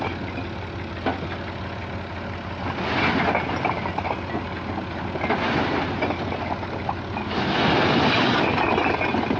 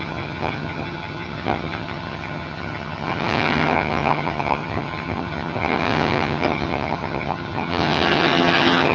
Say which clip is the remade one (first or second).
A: second